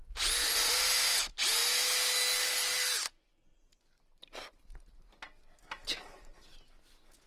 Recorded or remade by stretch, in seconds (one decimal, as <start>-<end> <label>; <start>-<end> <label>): 0.0-7.3 recorded